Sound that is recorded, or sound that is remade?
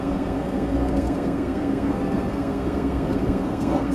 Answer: remade